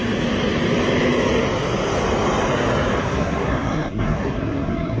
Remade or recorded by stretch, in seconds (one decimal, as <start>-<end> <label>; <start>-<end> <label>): 0.0-3.0 recorded; 3.0-5.0 remade

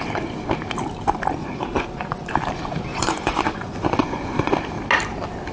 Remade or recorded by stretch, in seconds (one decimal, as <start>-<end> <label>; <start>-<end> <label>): 0.0-1.4 recorded; 1.4-2.3 remade; 2.3-2.9 recorded; 2.9-4.5 remade; 4.5-5.5 recorded

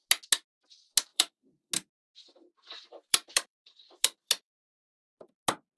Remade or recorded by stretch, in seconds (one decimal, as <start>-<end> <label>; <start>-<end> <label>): 0.0-1.1 recorded; 1.1-1.7 remade; 1.7-3.1 recorded; 3.1-4.6 remade; 4.6-5.8 recorded

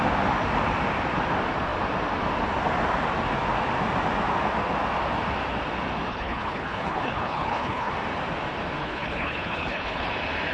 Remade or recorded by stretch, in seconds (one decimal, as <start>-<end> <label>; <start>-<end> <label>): 0.0-6.1 recorded; 6.1-7.9 remade; 7.9-8.8 recorded; 8.8-10.1 remade; 10.1-10.5 recorded

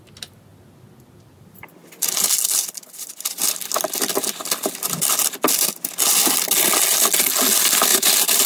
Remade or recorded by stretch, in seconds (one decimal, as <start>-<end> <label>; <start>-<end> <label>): 0.0-7.9 recorded; 7.9-8.5 remade